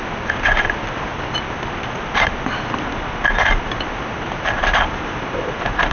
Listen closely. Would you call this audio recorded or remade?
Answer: recorded